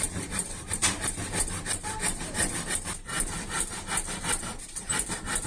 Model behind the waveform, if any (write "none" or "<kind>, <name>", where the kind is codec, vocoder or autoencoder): vocoder, BigVGAN v2